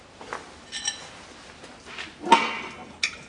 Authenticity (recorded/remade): recorded